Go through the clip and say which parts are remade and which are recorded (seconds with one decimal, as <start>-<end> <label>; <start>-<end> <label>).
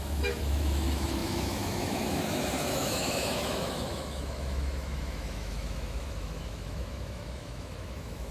0.0-8.3 remade